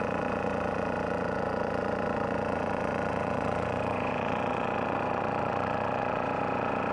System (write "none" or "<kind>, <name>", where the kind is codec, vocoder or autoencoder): vocoder, Vocos